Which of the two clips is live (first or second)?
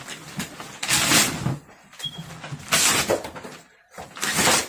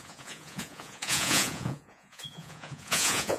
first